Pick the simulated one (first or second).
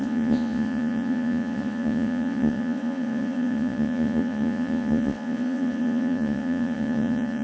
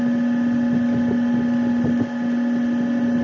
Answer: first